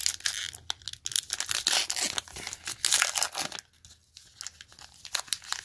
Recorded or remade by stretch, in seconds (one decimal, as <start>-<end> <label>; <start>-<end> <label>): 0.0-5.6 recorded